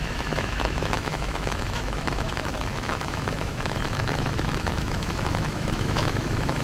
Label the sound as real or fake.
fake